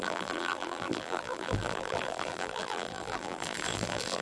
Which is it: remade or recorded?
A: remade